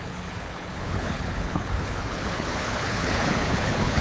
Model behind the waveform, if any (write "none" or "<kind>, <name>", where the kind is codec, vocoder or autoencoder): codec, HILCodec